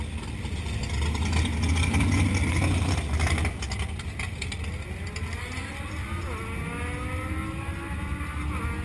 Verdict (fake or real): real